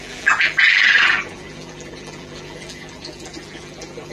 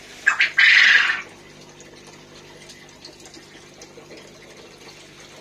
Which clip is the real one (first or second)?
second